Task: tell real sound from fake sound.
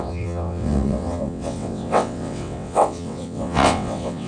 fake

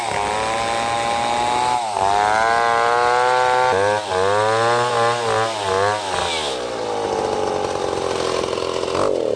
real